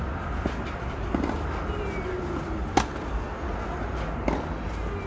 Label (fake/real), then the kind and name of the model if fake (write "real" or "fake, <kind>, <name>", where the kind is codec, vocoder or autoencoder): real